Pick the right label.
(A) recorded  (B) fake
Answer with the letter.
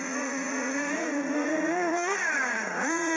B